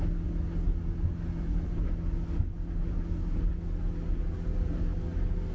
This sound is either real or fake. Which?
real